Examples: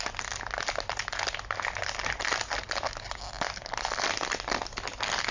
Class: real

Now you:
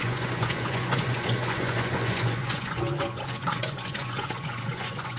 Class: fake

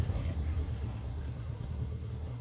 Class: fake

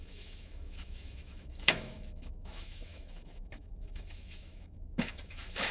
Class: fake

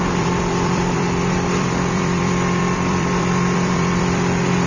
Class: fake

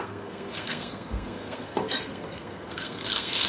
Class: fake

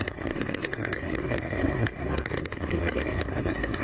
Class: fake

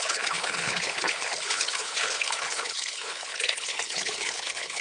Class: fake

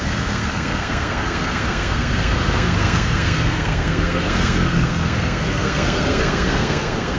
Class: fake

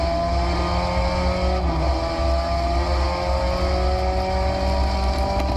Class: real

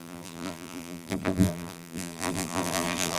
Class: fake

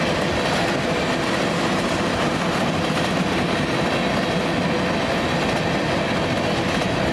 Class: real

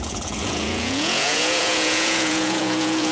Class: fake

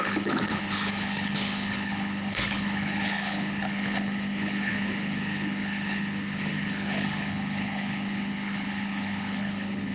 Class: fake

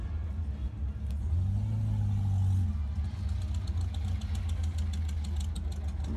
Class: real